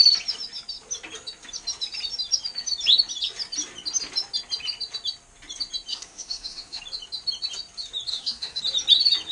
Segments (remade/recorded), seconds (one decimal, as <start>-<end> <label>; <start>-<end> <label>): 0.0-5.9 recorded; 5.9-6.8 remade; 6.8-8.1 recorded; 8.1-8.6 remade; 8.6-9.3 recorded